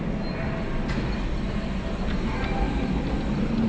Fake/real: real